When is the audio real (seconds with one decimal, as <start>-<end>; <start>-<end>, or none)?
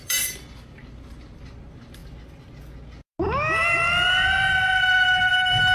2.0-5.3